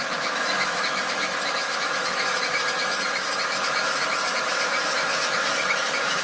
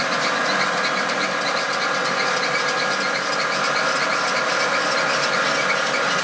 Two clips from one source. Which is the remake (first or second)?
first